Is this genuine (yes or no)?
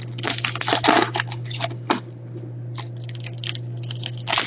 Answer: yes